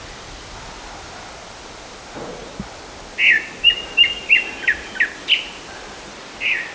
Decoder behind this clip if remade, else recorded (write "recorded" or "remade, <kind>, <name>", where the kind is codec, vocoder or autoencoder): recorded